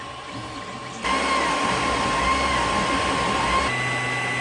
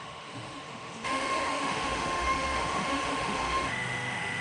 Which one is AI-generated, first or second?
second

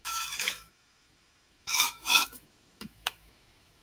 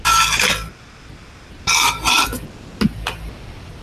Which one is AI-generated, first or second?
first